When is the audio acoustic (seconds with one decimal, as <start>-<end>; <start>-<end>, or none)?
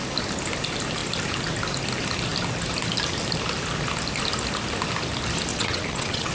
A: 0.0-5.5